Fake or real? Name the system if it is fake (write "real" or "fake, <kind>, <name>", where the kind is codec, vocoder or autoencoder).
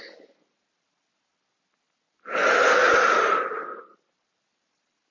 real